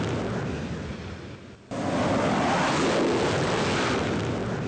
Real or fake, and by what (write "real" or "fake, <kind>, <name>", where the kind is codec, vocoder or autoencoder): real